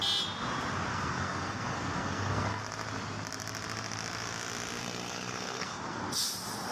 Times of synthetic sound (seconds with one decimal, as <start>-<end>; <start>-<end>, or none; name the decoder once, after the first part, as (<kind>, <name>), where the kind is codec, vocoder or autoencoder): 0.9-2.6 (codec, SNAC); 4.8-6.0